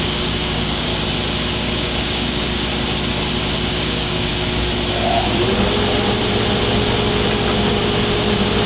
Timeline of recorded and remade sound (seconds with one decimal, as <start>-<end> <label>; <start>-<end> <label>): 0.0-0.9 remade; 0.9-1.5 recorded; 1.5-2.7 remade; 2.7-3.7 recorded; 3.7-4.3 remade; 4.3-8.7 recorded